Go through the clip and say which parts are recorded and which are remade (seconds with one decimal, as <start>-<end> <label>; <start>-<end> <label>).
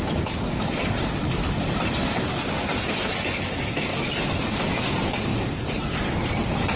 0.0-3.9 remade; 3.9-4.4 recorded; 4.4-6.8 remade